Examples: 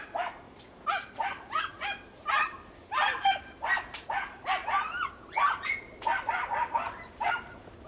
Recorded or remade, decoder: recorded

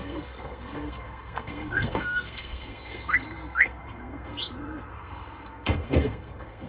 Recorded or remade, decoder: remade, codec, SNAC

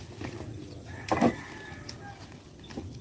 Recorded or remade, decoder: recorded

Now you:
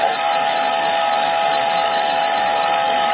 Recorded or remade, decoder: remade, codec, DAC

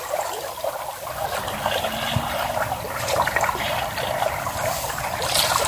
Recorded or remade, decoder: remade, vocoder, BigVGAN v2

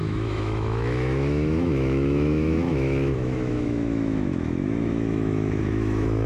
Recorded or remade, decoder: remade, autoencoder, DAC-VAE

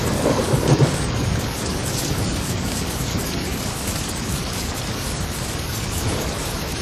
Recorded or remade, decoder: remade, codec, DAC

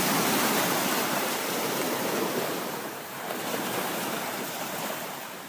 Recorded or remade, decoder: remade, vocoder, BigVGAN v2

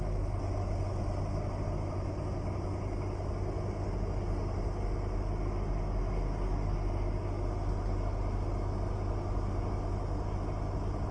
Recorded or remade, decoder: recorded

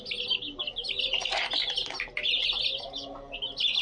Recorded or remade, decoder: recorded